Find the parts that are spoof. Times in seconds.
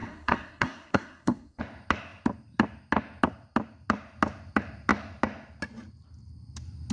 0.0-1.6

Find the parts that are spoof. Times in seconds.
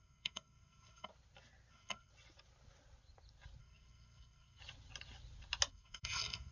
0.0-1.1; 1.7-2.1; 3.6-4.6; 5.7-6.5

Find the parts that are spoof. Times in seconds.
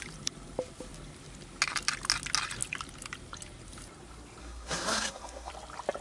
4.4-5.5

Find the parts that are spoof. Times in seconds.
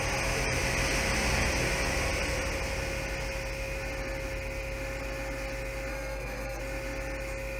5.9-6.6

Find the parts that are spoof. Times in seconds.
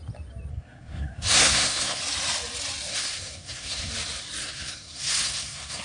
0.5-2.0; 2.9-3.9; 4.4-5.8